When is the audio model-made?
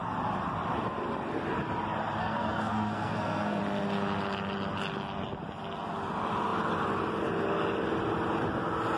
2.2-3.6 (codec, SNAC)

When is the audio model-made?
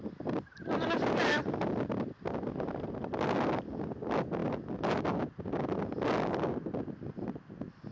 none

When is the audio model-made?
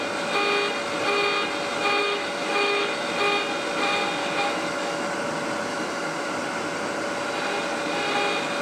2.0-3.1 (autoencoder, DAC-VAE); 4.2-5.1; 5.7-6.3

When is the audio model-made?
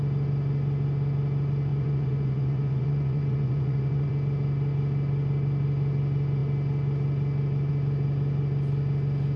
1.7-4.1 (vocoder, Vocos)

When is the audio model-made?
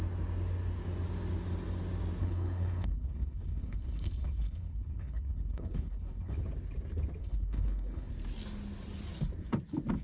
2.2-6.4 (codec, HILCodec); 7.2-8.1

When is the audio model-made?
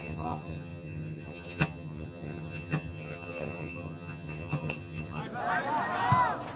0.0-5.2 (vocoder, HiFi-GAN)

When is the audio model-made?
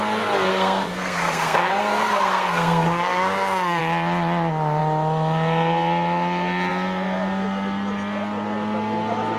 0.5-3.8 (codec, SNAC)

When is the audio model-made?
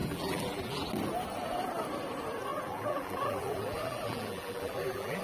0.0-0.9 (vocoder, BigVGAN v2); 2.5-5.2